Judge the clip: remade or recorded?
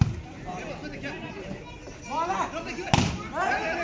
recorded